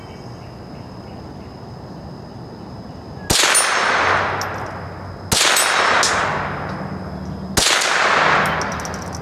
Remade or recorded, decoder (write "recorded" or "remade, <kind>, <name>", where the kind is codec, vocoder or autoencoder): recorded